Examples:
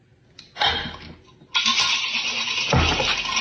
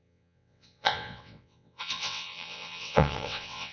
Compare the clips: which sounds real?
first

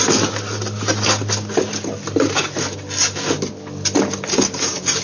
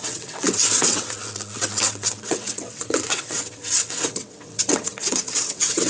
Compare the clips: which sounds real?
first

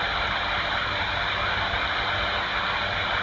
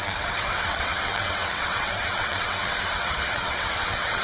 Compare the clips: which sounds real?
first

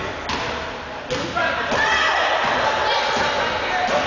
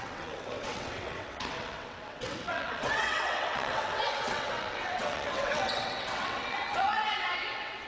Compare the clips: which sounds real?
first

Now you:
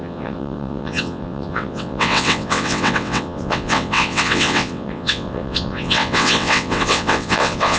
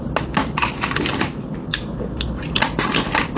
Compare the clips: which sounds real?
second